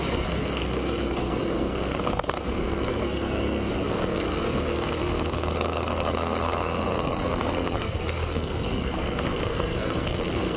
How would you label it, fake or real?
fake